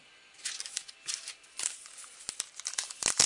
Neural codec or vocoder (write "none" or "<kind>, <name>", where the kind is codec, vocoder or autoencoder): none